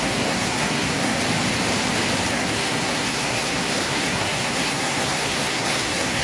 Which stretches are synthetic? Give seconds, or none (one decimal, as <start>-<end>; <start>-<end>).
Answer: 0.0-1.2; 2.3-6.2